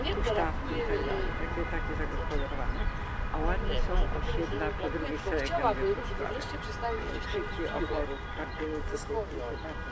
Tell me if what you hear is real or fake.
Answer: real